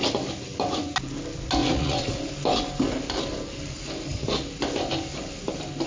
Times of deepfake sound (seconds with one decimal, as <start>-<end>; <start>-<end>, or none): 1.6-2.2